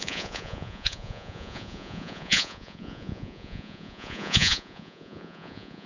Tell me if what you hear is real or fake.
fake